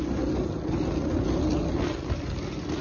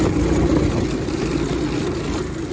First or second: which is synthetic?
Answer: second